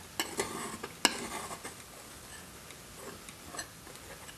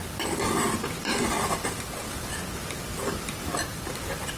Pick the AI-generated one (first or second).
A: second